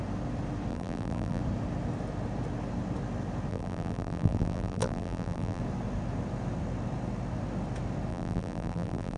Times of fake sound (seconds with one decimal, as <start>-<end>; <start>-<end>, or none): 0.7-1.4; 3.5-5.6; 8.1-9.2